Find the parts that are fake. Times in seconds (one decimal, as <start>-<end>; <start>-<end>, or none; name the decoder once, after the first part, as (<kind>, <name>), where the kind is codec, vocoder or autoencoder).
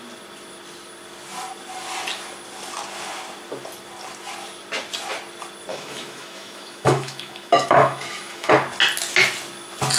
5.7-8.5 (autoencoder, DAC-VAE)